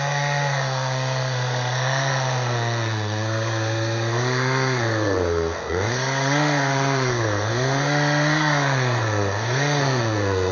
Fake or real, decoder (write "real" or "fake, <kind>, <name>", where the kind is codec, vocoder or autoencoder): fake, codec, SNAC